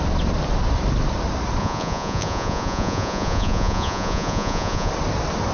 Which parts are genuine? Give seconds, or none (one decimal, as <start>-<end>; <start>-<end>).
0.0-1.6; 4.9-5.5

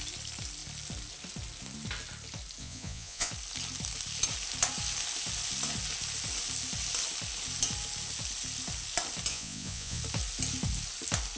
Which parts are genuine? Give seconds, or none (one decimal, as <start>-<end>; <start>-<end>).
0.0-2.6; 3.3-9.3; 10.0-11.4

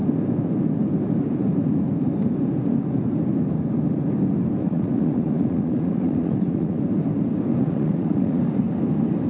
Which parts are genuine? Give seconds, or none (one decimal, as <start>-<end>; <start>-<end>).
0.0-4.6; 6.8-7.5; 8.4-9.3